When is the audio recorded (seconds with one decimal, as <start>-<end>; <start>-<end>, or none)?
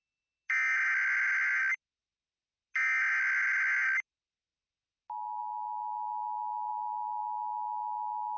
0.0-8.4